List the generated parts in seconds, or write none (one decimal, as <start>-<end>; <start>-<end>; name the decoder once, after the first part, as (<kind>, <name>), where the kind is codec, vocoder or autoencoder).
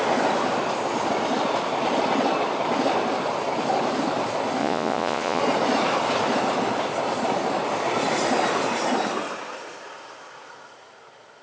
4.6-5.4 (vocoder, Vocos)